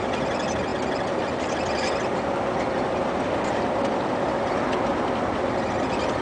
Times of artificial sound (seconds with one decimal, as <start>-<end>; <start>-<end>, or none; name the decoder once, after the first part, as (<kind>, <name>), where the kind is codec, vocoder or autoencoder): none